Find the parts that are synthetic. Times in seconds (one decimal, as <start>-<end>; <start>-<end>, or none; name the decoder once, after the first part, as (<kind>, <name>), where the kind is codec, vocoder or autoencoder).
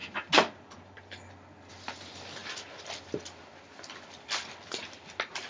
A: none